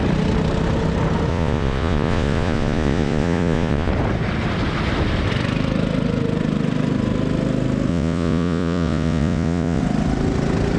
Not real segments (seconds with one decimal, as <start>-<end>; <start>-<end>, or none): 1.3-3.9; 7.9-9.8